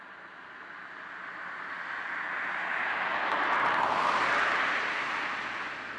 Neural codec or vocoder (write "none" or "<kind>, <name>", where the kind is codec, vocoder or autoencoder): none